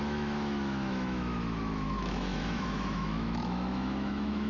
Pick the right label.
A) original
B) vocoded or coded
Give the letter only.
B